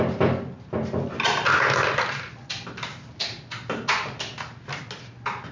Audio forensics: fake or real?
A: real